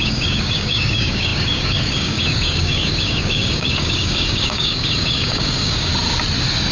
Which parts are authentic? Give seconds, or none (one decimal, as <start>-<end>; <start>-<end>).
5.9-6.7